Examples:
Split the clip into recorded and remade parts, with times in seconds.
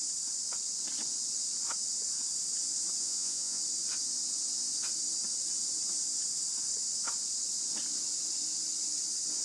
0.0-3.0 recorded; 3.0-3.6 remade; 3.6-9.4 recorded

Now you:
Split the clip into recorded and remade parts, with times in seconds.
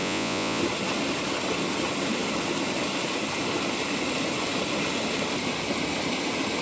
0.0-0.6 remade; 0.6-6.6 recorded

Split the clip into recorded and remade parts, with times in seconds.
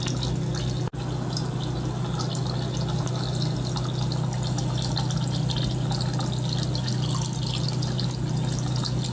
0.0-9.1 recorded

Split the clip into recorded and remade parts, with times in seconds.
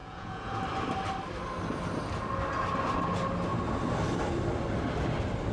0.0-0.6 remade; 0.6-5.5 recorded